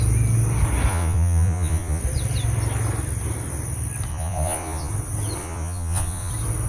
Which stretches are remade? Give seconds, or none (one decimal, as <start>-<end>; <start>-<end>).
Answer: 0.9-2.0; 4.1-4.9; 5.4-6.3